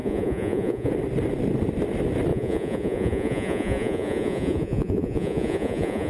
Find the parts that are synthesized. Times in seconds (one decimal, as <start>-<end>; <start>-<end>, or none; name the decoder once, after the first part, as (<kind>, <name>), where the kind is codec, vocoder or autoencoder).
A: 0.0-0.9 (vocoder, Vocos); 2.3-6.1